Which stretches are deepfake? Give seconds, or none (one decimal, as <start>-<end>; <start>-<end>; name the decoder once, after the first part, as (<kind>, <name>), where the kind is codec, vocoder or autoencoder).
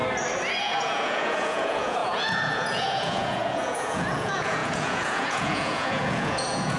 0.6-6.8 (vocoder, Vocos)